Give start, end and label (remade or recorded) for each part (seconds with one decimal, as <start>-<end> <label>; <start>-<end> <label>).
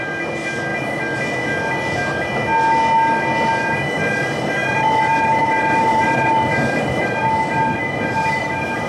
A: 0.0-4.6 recorded; 4.6-7.2 remade; 7.2-8.9 recorded